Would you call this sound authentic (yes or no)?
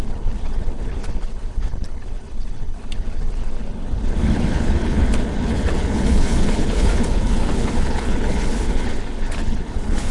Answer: no